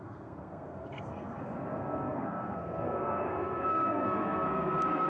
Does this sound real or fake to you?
fake